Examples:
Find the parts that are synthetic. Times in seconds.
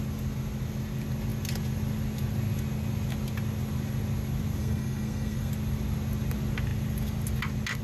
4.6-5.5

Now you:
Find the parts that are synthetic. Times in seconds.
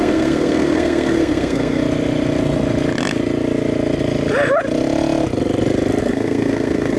0.0-1.8; 6.0-7.0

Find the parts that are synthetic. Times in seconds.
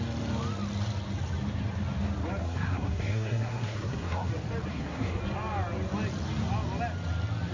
2.4-4.3; 4.7-5.2